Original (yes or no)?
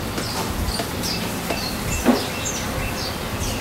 yes